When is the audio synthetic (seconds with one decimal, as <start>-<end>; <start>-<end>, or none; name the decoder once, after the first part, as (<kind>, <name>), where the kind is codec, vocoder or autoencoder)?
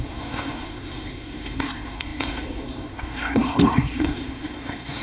0.0-5.0 (codec, SNAC)